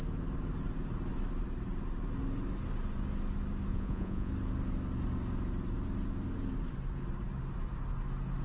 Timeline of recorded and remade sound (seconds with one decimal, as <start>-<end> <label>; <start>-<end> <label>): 0.0-3.7 recorded; 3.7-4.3 remade; 4.3-8.4 recorded